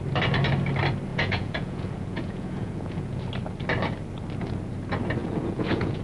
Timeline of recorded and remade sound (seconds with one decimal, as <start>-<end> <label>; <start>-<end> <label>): 0.0-1.1 recorded; 1.1-3.2 remade; 3.2-5.2 recorded; 5.2-6.0 remade

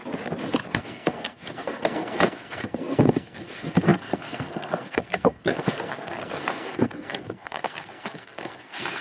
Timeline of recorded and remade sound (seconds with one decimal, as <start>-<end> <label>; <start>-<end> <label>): 0.0-0.7 recorded; 0.7-9.0 remade